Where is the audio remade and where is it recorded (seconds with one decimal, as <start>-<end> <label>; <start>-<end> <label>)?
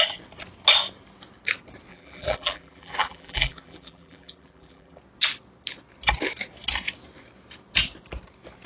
0.0-1.9 recorded; 1.9-5.0 remade; 5.0-8.7 recorded